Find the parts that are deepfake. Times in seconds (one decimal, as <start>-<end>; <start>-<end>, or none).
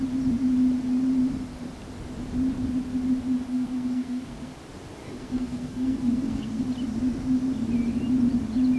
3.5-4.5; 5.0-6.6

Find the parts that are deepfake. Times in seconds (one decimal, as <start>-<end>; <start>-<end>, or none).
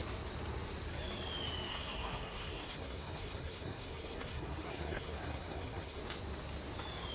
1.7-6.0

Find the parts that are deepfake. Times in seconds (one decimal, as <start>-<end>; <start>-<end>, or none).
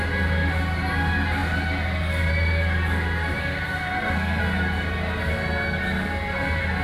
3.4-4.4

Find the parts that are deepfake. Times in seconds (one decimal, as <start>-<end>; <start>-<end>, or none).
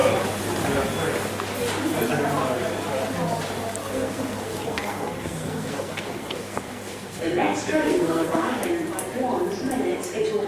3.8-8.7